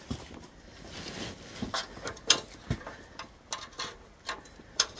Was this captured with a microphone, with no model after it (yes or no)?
yes